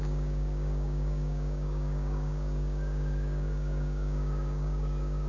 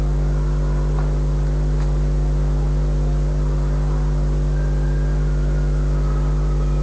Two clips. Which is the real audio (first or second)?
second